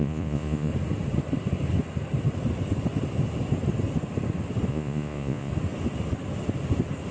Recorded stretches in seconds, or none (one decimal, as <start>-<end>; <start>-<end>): 0.7-4.7; 5.5-7.1